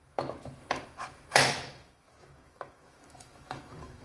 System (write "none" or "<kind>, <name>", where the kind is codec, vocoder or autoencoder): autoencoder, DAC-VAE